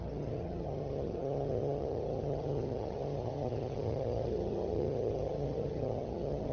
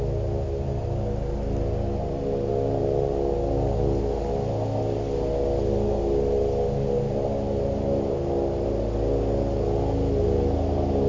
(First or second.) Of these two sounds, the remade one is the first